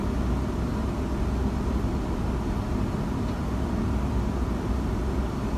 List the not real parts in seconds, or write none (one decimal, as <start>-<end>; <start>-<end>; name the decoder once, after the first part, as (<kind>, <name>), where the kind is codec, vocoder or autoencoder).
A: none